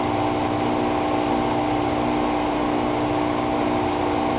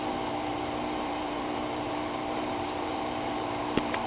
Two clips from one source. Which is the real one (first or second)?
first